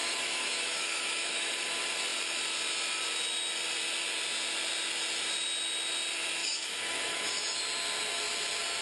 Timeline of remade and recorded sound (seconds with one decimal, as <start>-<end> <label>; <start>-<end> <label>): 0.0-1.5 remade; 1.5-6.4 recorded; 6.4-7.6 remade; 7.6-8.8 recorded